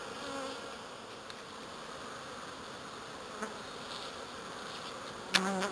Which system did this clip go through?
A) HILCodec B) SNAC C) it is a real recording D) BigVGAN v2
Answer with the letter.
C